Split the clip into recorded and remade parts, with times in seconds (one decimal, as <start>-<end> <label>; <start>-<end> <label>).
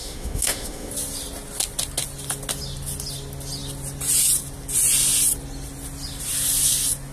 0.0-0.9 remade; 0.9-7.1 recorded